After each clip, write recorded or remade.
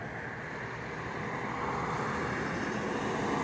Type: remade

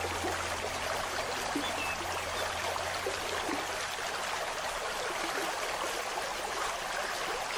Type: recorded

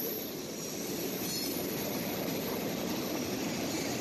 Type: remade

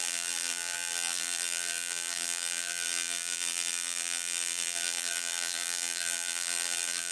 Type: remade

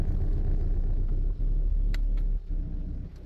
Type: recorded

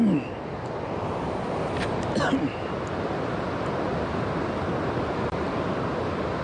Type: recorded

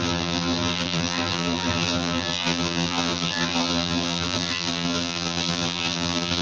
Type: remade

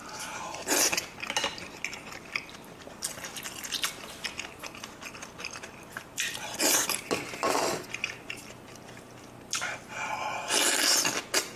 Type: recorded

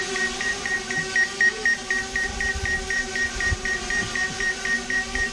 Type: remade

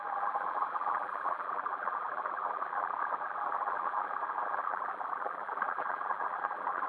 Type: remade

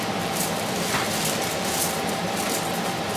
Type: remade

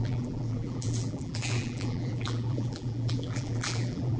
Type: remade